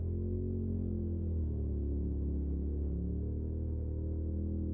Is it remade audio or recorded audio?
recorded